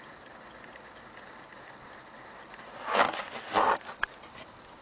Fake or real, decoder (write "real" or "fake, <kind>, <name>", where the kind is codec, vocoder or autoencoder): real